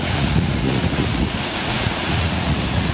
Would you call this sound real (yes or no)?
no